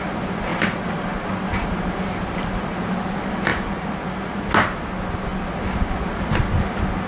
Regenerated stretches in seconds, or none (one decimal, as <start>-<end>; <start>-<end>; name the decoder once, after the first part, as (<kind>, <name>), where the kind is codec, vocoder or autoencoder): 0.5-2.9 (vocoder, BigVGAN v2); 3.5-4.5